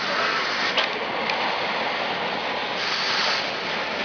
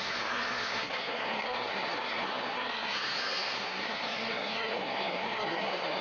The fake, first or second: second